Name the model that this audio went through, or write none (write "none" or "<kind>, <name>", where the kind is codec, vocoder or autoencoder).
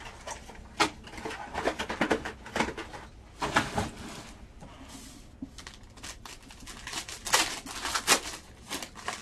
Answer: none